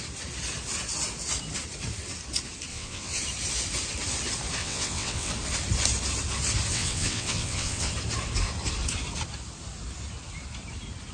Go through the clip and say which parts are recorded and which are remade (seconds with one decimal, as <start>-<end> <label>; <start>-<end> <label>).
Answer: 0.0-2.7 recorded; 2.7-3.2 remade; 3.2-4.6 recorded; 4.6-5.3 remade; 5.3-6.7 recorded; 6.7-7.9 remade; 7.9-11.1 recorded